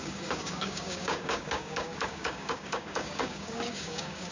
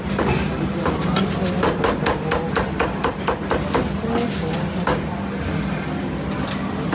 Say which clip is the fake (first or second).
first